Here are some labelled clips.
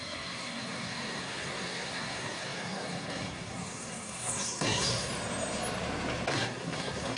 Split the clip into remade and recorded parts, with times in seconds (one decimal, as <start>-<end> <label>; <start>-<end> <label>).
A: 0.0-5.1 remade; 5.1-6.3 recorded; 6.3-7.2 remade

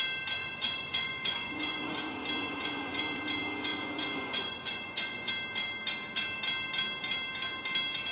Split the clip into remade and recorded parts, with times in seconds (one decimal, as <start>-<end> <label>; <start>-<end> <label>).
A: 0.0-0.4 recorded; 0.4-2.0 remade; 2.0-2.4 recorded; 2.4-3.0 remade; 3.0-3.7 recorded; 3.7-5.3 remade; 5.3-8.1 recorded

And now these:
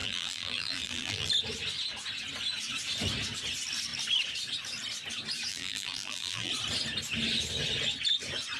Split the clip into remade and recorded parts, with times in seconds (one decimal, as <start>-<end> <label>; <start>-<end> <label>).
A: 0.0-1.3 remade; 1.3-5.5 recorded; 5.5-6.5 remade; 6.5-8.6 recorded

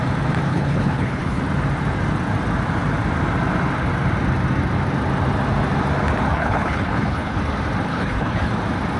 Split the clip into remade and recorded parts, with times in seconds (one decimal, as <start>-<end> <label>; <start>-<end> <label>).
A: 0.0-0.5 recorded; 0.5-1.4 remade; 1.4-6.3 recorded; 6.3-7.4 remade; 7.4-7.9 recorded; 7.9-8.5 remade; 8.5-9.0 recorded

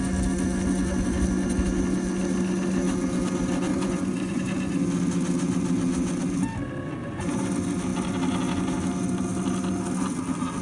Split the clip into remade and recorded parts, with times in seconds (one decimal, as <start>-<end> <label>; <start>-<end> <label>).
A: 0.0-3.7 recorded; 3.7-4.4 remade; 4.4-7.0 recorded; 7.0-7.5 remade; 7.5-10.6 recorded

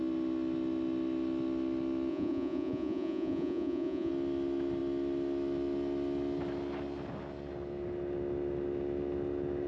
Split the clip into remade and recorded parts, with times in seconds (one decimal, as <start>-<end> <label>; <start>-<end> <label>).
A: 0.0-2.1 recorded; 2.1-4.1 remade; 4.1-9.7 recorded